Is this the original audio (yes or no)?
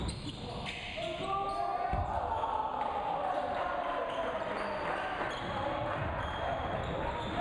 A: yes